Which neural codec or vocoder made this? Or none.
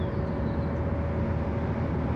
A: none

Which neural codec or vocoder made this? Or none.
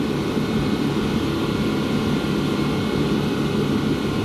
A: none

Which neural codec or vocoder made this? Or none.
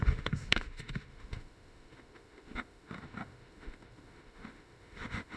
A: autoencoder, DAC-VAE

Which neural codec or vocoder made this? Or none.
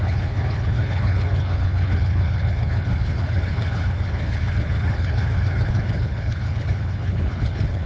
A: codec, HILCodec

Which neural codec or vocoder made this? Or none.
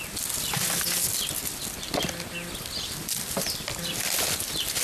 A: none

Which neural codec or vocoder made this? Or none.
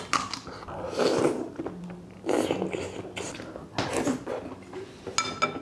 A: none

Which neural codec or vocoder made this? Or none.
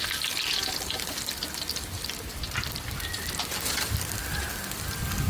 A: none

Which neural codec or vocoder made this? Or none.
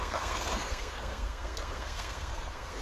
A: codec, SNAC